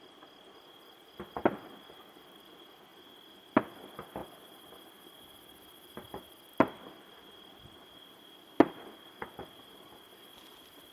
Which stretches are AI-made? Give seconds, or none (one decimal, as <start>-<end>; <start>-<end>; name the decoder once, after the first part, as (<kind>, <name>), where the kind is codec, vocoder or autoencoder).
none